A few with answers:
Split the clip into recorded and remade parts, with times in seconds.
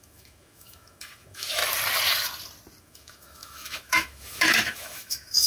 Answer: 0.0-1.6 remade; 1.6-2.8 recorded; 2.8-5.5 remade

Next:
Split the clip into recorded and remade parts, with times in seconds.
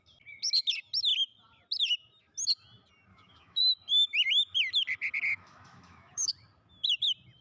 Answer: 0.0-3.1 recorded; 3.1-3.6 remade; 3.6-5.3 recorded; 5.3-6.3 remade; 6.3-7.4 recorded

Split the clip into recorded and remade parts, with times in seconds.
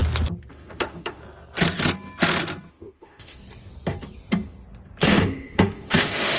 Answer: 0.0-0.5 recorded; 0.5-1.2 remade; 1.2-2.7 recorded; 2.7-3.4 remade; 3.4-5.0 recorded; 5.0-6.4 remade